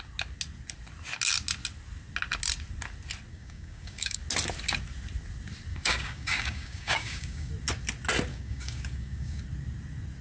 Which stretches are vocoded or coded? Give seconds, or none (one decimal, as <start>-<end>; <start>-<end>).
3.3-4.2; 5.7-7.5; 8.3-9.4